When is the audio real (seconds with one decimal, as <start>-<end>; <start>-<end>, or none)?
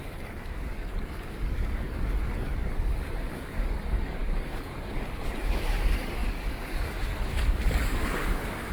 none